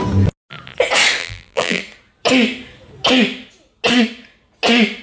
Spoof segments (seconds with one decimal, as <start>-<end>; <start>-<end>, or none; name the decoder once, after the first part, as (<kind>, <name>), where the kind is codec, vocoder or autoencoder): 1.2-1.8 (vocoder, BigVGAN v2)